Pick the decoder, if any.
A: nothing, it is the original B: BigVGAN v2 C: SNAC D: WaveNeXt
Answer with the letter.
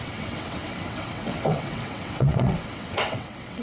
D